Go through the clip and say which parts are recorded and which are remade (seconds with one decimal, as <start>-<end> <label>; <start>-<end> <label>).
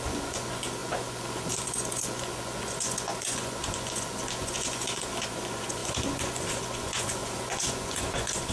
0.0-8.5 remade